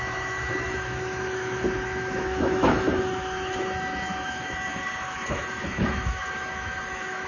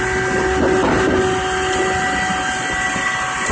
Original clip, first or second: second